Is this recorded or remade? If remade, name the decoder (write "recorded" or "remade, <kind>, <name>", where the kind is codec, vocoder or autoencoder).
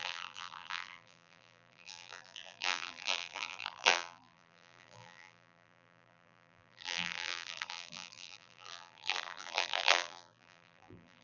remade, vocoder, BigVGAN v2